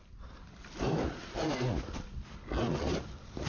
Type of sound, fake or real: real